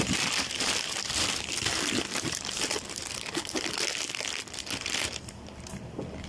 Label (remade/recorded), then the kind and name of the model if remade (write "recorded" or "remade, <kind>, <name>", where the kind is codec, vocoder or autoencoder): remade, vocoder, BigVGAN v2